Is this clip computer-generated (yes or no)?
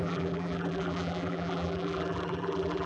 yes